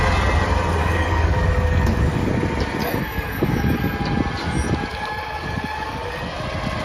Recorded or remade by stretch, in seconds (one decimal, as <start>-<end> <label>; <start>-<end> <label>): 0.0-0.8 recorded; 0.8-2.3 remade; 2.3-2.8 recorded; 2.8-3.8 remade; 3.8-4.9 recorded; 4.9-6.2 remade; 6.2-6.8 recorded